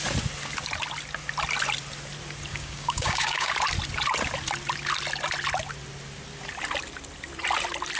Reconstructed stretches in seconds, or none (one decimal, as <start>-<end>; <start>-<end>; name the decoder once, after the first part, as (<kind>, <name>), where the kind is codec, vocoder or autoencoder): 2.5-3.5 (codec, DAC)